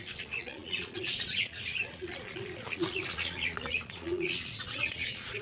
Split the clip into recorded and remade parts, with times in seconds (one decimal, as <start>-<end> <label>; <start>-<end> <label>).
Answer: 0.0-5.4 remade

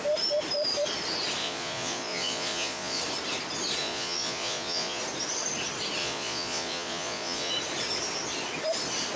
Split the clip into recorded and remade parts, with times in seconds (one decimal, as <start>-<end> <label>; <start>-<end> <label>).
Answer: 0.0-1.4 recorded; 1.4-3.0 remade; 3.0-3.8 recorded; 3.8-5.0 remade; 5.0-6.0 recorded; 6.0-7.5 remade; 7.5-9.2 recorded

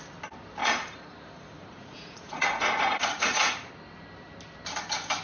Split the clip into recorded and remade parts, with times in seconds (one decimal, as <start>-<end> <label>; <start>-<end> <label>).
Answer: 0.0-0.6 recorded; 0.6-3.7 remade; 3.7-5.2 recorded

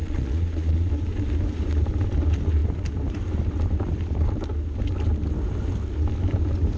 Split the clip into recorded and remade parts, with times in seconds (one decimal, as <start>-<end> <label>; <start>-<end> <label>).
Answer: 0.0-0.9 remade; 0.9-6.8 recorded

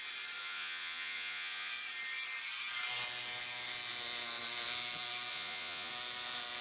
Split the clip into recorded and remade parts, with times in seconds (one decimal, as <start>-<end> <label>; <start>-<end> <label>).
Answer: 0.0-0.4 recorded; 0.4-1.7 remade; 1.7-5.3 recorded; 5.3-5.9 remade; 5.9-6.6 recorded

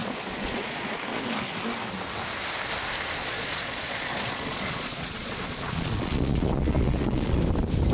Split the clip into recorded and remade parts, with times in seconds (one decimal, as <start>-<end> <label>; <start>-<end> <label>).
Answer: 0.0-0.9 remade; 0.9-3.2 recorded; 3.2-7.4 remade; 7.4-7.9 recorded

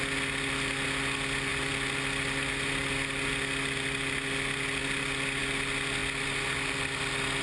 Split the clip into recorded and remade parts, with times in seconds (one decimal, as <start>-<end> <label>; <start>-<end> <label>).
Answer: 0.0-7.4 recorded